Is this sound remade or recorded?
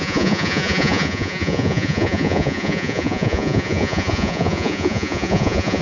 remade